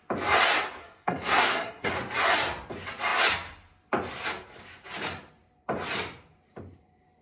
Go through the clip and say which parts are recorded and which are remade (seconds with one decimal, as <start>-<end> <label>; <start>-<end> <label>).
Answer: 0.0-0.8 recorded; 0.8-1.9 remade; 1.9-7.2 recorded

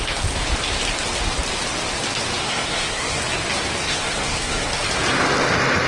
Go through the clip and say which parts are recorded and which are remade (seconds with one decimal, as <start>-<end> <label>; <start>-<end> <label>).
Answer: 0.0-2.4 recorded; 2.4-3.2 remade; 3.2-3.8 recorded; 3.8-4.7 remade; 4.7-5.9 recorded

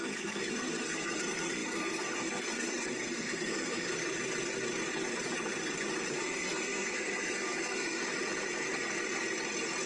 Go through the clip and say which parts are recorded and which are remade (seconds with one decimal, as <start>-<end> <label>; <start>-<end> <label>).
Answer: 0.0-4.0 remade; 4.0-5.9 recorded; 5.9-8.0 remade; 8.0-9.9 recorded